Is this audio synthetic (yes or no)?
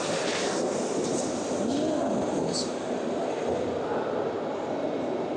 no